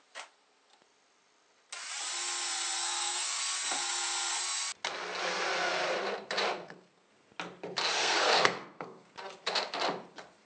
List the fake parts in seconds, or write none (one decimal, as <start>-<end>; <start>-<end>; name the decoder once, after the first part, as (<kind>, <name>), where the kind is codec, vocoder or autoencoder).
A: 2.8-3.4 (codec, SNAC); 6.5-7.1; 8.0-9.1